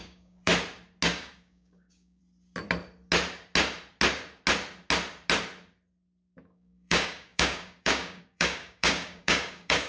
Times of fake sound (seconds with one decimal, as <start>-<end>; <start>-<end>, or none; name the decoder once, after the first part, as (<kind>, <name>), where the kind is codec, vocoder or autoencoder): 0.0-0.5 (codec, DAC); 1.1-2.2; 6.4-9.9